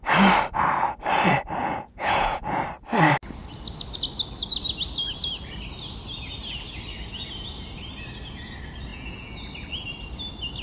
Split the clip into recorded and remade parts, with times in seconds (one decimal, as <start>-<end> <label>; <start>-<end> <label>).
0.0-1.6 recorded; 1.6-2.6 remade; 2.6-8.9 recorded; 8.9-9.4 remade; 9.4-10.6 recorded